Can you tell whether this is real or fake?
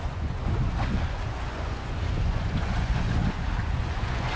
fake